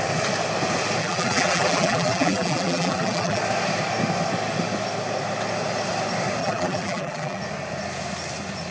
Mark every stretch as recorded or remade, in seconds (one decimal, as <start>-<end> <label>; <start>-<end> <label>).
0.0-1.0 recorded; 1.0-3.4 remade; 3.4-6.4 recorded; 6.4-7.4 remade; 7.4-8.7 recorded